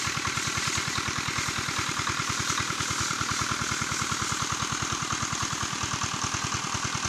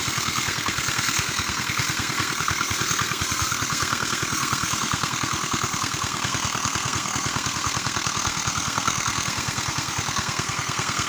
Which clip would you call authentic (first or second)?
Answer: first